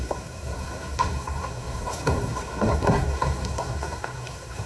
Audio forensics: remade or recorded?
remade